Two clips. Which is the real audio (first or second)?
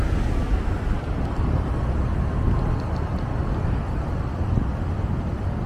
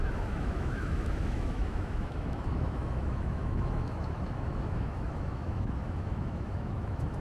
first